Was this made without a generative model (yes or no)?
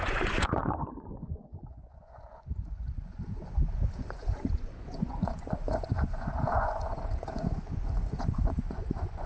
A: no